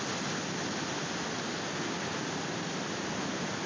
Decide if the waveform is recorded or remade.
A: recorded